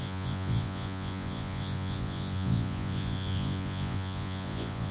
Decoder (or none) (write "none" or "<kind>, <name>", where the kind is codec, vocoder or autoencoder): vocoder, Vocos